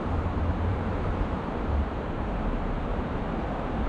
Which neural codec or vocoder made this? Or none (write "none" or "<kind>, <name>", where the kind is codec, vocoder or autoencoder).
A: vocoder, BigVGAN v2